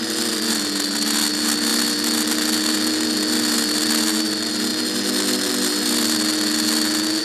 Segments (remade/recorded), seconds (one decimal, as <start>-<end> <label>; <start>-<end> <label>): 0.0-7.2 recorded